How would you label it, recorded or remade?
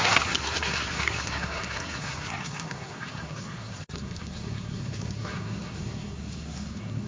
remade